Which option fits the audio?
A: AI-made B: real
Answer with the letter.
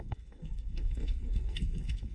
A